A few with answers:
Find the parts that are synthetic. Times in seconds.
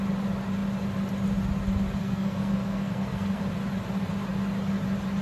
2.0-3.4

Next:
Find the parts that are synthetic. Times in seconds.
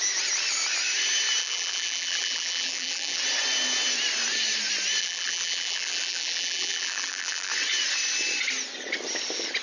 1.4-3.2; 5.0-7.5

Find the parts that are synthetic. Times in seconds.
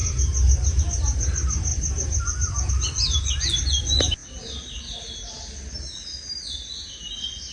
1.7-2.7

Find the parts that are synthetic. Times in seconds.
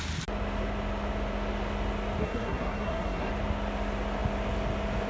2.2-3.3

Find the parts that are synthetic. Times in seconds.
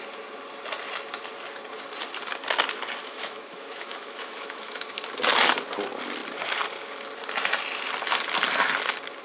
3.0-5.1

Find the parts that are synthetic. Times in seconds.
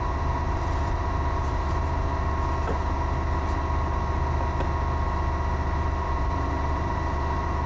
0.0-2.1; 6.1-7.7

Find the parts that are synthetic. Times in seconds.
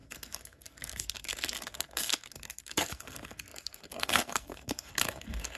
0.0-5.6